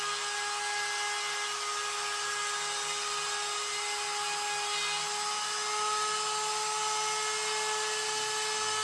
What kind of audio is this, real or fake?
real